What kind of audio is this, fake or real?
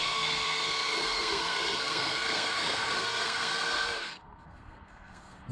fake